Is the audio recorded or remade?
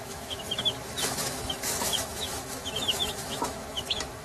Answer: remade